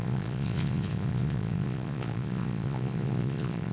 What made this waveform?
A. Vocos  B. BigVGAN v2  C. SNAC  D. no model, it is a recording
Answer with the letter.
A